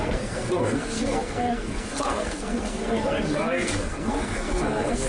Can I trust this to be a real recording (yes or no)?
no